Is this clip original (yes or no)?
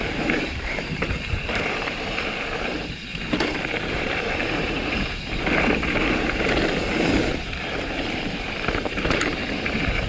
no